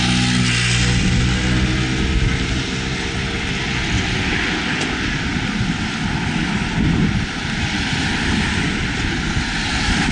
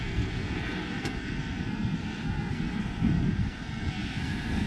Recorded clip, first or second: first